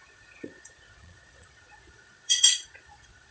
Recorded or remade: remade